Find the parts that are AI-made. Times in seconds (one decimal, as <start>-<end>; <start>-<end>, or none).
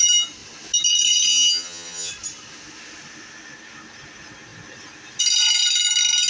1.3-2.1